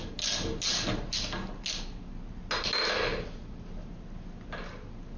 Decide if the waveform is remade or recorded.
recorded